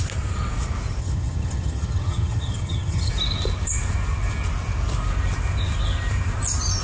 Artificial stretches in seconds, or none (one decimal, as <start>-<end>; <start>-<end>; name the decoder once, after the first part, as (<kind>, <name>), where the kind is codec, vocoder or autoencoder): 1.0-3.1 (vocoder, HiFi-GAN)